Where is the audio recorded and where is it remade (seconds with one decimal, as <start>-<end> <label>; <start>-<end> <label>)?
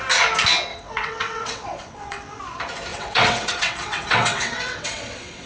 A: 0.0-0.7 recorded; 0.7-2.4 remade; 2.4-2.9 recorded; 2.9-5.5 remade